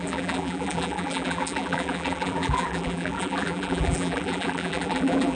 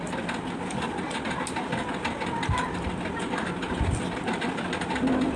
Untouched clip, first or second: second